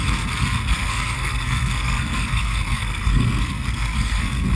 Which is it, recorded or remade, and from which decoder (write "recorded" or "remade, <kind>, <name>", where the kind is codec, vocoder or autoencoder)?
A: remade, codec, SNAC